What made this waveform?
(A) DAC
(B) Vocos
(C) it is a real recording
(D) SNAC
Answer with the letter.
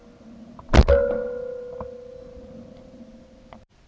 C